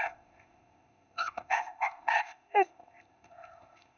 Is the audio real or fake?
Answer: fake